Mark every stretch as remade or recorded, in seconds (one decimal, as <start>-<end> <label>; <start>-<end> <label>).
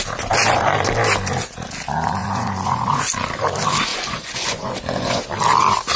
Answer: 0.0-2.2 recorded; 2.2-3.0 remade; 3.0-3.9 recorded; 3.9-5.2 remade; 5.2-6.0 recorded